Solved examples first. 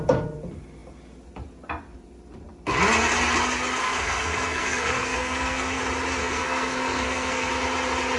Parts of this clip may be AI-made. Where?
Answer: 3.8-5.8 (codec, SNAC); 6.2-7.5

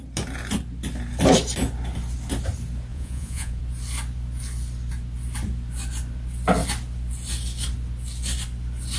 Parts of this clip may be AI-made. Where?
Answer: 2.9-3.6 (vocoder, Vocos)

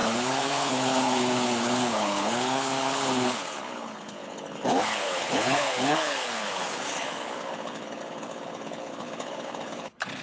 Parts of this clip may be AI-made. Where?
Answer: 0.0-10.2 (codec, HILCodec)

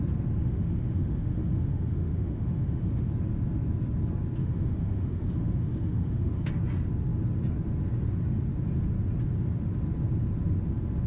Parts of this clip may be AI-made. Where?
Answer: 0.4-3.1 (autoencoder, DAC-VAE); 4.4-6.5

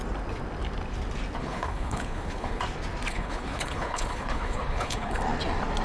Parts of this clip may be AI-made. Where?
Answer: 1.4-2.6 (codec, HILCodec); 3.1-5.2

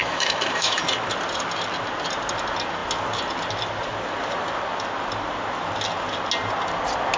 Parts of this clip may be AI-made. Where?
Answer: 0.0-0.8 (autoencoder, DAC-VAE)

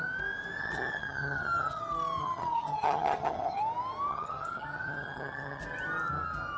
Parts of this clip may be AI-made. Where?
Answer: 0.6-1.8 (vocoder, HiFi-GAN); 2.2-3.6; 4.1-5.6